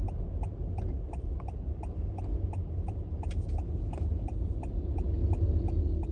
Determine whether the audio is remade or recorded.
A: recorded